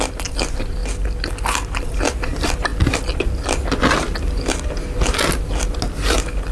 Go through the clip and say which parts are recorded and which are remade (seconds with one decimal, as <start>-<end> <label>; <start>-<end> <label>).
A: 0.0-0.8 remade; 0.8-1.8 recorded; 1.8-2.7 remade; 2.7-6.5 recorded